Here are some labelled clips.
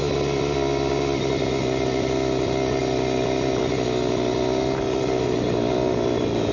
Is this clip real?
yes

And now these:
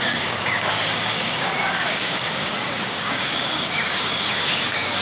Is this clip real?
no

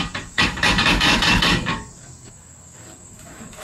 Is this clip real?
no